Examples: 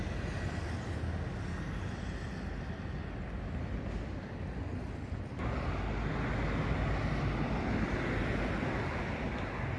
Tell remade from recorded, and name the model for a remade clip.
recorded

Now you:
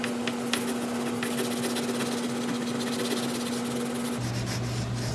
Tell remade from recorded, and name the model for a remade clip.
recorded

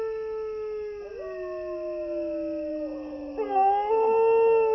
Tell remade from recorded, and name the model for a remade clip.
recorded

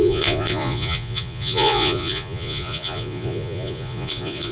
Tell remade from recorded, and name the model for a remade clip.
remade, vocoder, Vocos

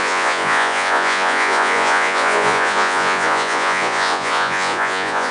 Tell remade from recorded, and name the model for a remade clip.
remade, vocoder, Vocos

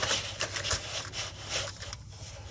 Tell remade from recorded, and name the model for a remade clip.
recorded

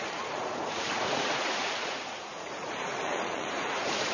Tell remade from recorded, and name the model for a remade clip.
remade, vocoder, Vocos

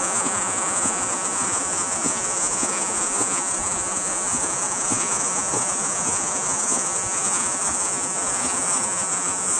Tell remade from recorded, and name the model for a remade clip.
remade, vocoder, Vocos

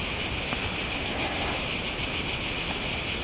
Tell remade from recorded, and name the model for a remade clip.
recorded